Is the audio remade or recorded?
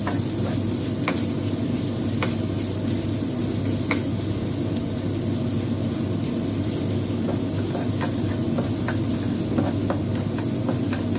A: recorded